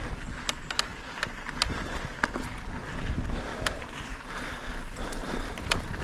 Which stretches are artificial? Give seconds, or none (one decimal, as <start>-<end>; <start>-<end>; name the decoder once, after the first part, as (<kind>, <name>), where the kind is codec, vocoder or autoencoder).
3.5-4.2 (vocoder, BigVGAN v2); 5.2-6.0

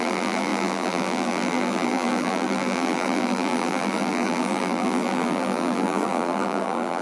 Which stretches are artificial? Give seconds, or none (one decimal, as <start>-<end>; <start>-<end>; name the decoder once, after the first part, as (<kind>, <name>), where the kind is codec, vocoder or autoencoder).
0.0-7.0 (vocoder, BigVGAN v2)

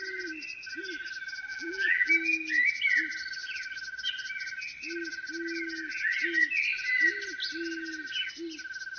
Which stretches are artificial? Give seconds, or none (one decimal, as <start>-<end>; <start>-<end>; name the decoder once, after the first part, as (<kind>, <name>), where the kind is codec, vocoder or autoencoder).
1.5-2.1 (vocoder, BigVGAN v2)

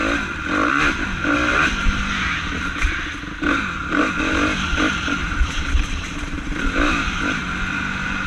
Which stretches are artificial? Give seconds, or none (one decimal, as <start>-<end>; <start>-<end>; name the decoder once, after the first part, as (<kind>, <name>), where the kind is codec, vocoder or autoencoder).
3.8-4.3 (vocoder, BigVGAN v2); 5.2-7.4